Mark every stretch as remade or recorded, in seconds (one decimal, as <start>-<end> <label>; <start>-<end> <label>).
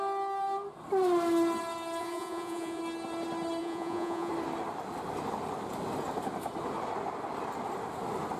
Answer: 0.0-2.0 recorded; 2.0-2.8 remade; 2.8-3.6 recorded; 3.6-4.3 remade; 4.3-8.4 recorded